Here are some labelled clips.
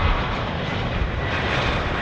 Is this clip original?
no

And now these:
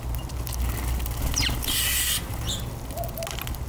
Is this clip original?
yes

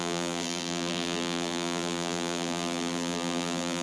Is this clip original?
no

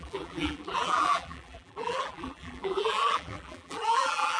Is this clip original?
no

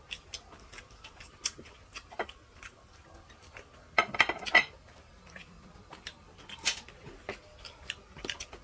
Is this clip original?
no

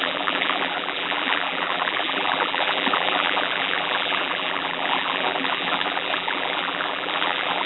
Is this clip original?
no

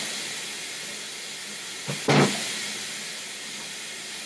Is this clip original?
yes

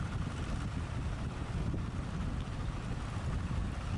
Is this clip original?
yes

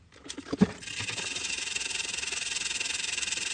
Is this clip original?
no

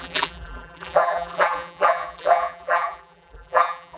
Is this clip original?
no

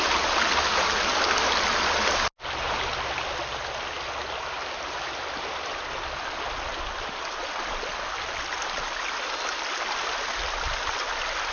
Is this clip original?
yes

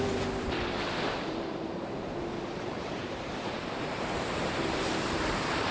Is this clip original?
no